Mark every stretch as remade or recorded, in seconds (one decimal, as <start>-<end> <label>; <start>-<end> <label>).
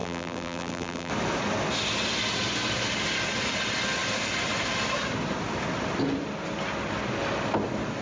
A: 0.0-1.1 remade; 1.1-8.0 recorded